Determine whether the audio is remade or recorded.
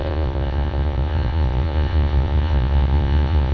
remade